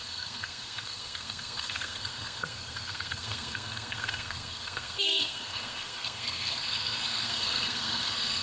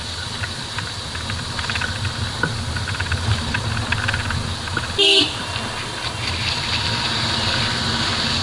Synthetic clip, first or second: first